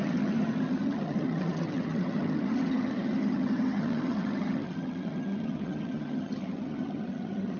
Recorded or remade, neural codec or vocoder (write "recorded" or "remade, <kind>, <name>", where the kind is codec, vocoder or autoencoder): remade, vocoder, HiFi-GAN